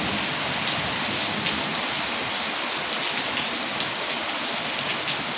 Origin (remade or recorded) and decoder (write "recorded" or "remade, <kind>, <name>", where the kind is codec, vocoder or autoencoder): recorded